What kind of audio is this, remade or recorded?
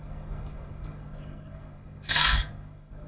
remade